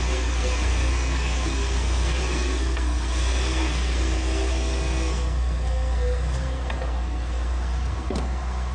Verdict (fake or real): fake